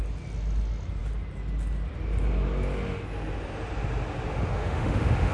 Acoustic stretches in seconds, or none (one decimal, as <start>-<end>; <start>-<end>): 0.0-4.3